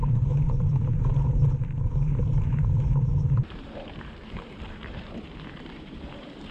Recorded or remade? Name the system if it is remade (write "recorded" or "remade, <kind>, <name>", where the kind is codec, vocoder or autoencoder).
remade, vocoder, BigVGAN v2